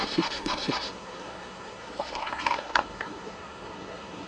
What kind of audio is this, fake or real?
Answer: fake